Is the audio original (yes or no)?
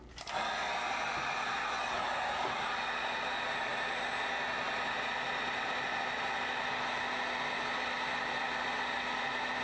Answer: yes